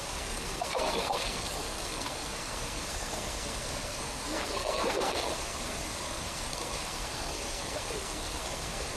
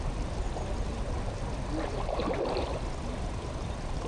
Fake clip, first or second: first